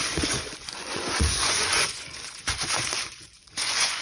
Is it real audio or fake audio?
fake